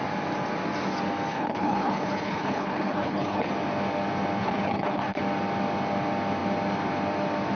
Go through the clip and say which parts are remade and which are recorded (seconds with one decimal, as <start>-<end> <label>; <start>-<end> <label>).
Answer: 0.0-1.3 recorded; 1.3-3.5 remade; 3.5-4.4 recorded; 4.4-5.2 remade; 5.2-7.5 recorded